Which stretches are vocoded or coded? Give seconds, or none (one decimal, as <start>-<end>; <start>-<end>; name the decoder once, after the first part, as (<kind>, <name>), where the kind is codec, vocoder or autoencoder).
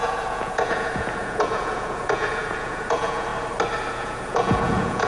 0.0-3.3 (vocoder, Vocos); 3.9-5.1